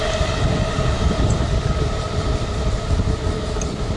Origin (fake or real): real